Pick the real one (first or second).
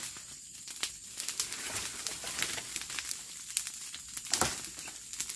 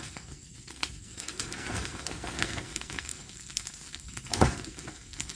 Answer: first